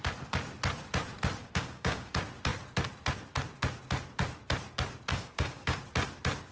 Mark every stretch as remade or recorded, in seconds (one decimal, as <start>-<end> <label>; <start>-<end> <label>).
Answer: 0.0-1.4 recorded; 1.4-2.1 remade; 2.1-5.1 recorded; 5.1-5.8 remade; 5.8-6.5 recorded